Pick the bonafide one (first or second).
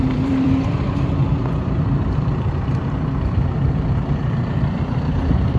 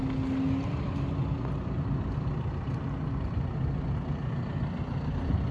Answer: second